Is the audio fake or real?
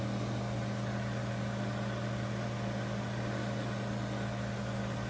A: real